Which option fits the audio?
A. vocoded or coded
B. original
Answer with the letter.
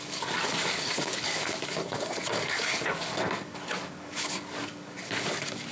A